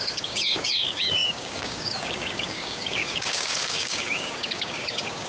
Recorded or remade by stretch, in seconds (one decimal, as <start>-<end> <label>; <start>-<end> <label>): 0.0-5.3 remade